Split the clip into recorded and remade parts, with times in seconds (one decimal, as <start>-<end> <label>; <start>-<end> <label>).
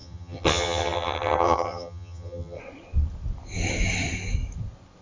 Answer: 0.0-2.6 remade; 2.6-5.0 recorded